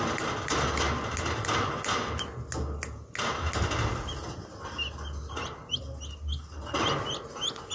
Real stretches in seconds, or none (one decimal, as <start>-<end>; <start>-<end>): 0.0-5.2; 5.8-7.7